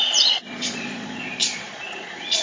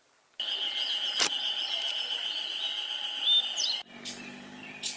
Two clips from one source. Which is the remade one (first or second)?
first